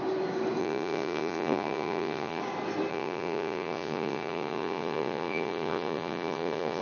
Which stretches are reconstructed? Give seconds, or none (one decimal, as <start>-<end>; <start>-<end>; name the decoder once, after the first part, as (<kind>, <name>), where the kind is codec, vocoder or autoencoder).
0.6-2.4 (vocoder, Vocos); 2.9-6.8